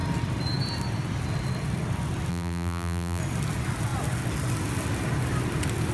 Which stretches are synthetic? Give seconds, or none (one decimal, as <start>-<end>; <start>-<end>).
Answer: 2.3-3.2